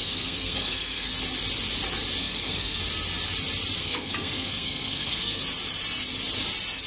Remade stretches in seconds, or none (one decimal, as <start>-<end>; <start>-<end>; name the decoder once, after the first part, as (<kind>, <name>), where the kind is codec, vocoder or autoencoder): 0.0-1.1 (codec, SNAC); 2.2-2.8; 3.8-5.4